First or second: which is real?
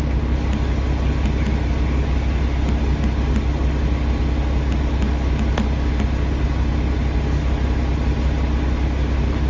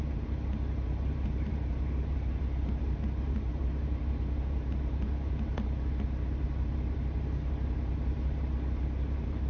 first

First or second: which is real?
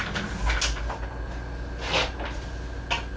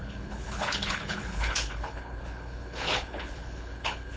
first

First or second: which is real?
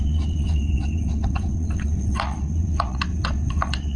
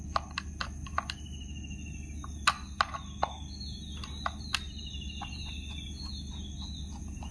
second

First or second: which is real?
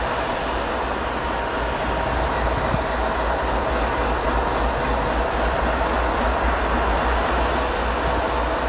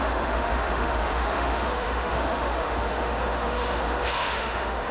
first